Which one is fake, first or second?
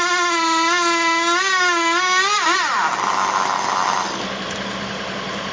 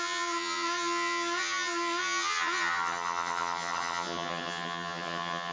second